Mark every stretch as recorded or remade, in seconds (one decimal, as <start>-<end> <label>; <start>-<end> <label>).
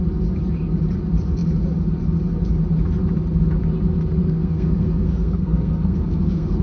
0.0-4.2 recorded; 4.2-6.6 remade